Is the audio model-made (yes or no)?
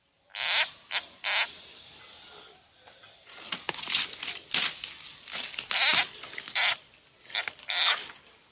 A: no